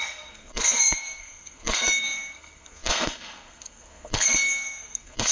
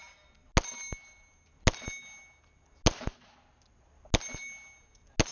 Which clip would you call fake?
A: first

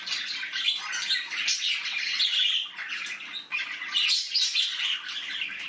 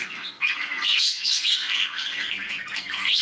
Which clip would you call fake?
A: second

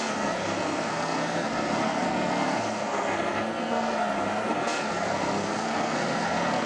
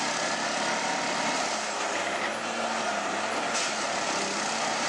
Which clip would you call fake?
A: first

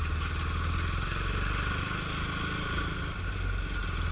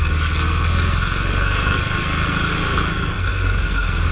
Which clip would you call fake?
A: second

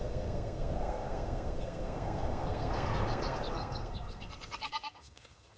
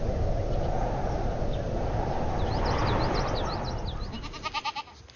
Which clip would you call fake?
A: first